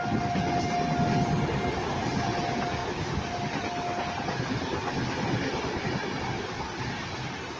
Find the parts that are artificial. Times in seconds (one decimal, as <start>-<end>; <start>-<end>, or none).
none